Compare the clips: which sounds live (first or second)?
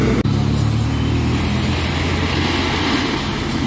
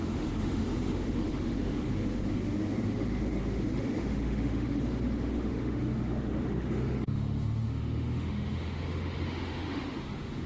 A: first